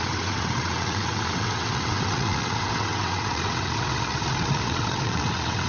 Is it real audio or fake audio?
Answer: fake